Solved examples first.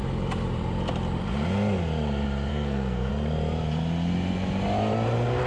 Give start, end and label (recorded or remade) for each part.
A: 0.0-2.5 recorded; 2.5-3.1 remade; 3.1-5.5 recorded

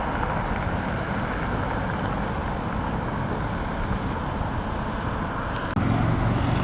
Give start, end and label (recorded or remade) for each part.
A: 0.0-6.6 recorded

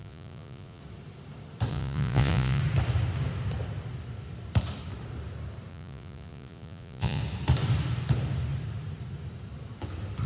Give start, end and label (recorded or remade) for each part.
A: 0.0-0.8 remade; 0.8-1.7 recorded; 1.7-2.6 remade; 2.6-5.7 recorded; 5.7-7.2 remade; 7.2-10.3 recorded

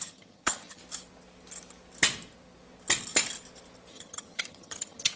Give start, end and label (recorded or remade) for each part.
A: 0.0-0.8 remade; 0.8-3.9 recorded; 3.9-5.2 remade

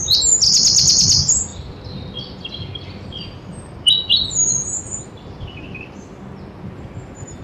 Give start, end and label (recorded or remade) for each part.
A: 0.0-7.4 recorded

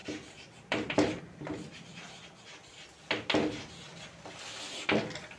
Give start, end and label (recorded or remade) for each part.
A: 0.0-1.2 remade; 1.2-5.4 recorded

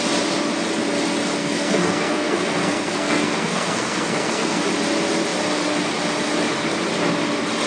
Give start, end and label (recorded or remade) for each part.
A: 0.0-1.4 recorded; 1.4-4.6 remade; 4.6-7.7 recorded

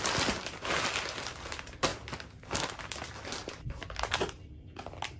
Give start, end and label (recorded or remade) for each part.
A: 0.0-5.2 recorded